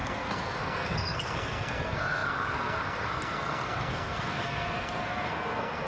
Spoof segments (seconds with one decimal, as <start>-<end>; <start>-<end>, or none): 0.0-5.9